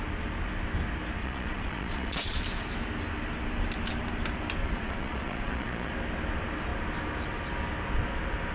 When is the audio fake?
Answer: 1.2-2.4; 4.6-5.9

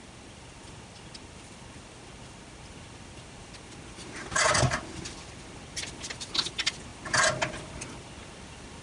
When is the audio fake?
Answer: none

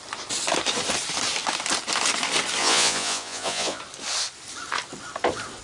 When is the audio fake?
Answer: 2.6-3.8

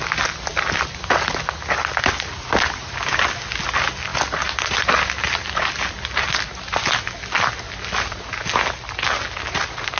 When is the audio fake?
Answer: none

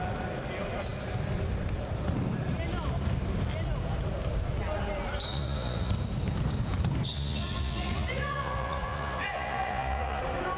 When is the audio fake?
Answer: 5.3-5.9; 7.1-10.2

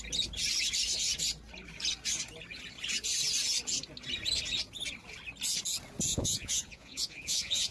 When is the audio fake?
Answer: 6.1-7.7

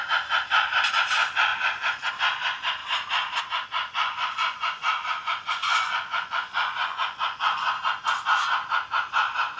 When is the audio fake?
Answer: 1.5-2.1; 3.8-7.8